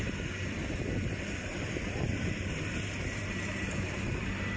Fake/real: fake